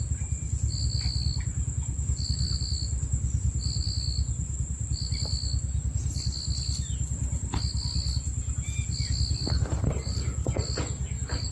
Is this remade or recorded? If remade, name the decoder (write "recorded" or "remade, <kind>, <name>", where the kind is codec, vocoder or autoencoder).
recorded